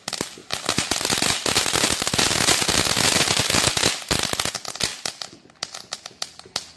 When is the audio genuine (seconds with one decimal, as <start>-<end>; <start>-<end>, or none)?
0.0-4.9; 5.8-6.8